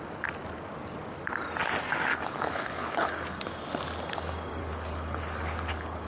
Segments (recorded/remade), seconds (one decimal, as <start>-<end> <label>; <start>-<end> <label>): 0.0-2.1 recorded; 2.1-3.4 remade; 3.4-4.6 recorded; 4.6-6.1 remade

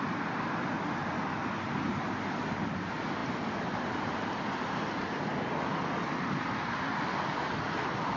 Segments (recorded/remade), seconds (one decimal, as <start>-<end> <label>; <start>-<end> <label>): 0.0-8.2 recorded

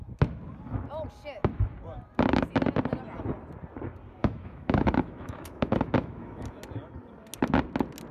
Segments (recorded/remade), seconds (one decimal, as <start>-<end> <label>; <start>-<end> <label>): 0.0-4.2 recorded; 4.2-6.6 remade; 6.6-8.1 recorded

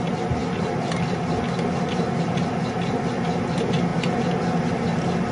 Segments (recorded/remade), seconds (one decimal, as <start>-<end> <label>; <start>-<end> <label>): 0.0-5.3 recorded